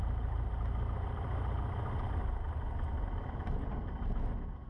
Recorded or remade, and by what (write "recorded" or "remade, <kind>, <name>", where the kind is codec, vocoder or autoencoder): recorded